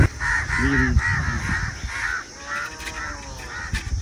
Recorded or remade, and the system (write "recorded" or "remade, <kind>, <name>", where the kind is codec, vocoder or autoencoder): recorded